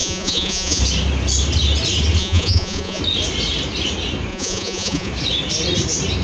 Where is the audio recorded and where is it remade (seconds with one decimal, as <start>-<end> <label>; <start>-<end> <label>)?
0.0-0.8 remade; 0.8-2.2 recorded; 2.2-3.0 remade; 3.0-4.3 recorded; 4.3-5.1 remade; 5.1-6.2 recorded